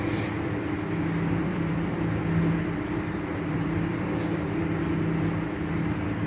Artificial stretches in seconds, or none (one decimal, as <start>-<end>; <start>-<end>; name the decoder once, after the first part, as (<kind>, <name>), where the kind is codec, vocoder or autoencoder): 1.4-4.8 (vocoder, BigVGAN v2)